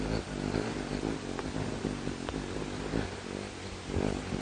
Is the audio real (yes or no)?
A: yes